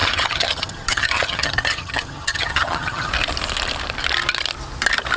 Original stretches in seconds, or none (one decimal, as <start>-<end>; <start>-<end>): 3.1-5.2